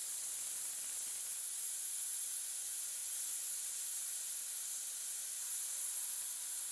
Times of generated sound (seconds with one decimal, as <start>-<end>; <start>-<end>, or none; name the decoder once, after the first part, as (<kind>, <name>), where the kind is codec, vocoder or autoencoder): none